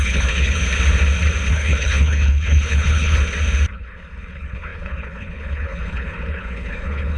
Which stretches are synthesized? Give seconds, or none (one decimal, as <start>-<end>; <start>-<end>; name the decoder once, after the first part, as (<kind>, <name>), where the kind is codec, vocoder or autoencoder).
0.0-0.6 (codec, HILCodec); 1.5-3.2; 3.7-7.2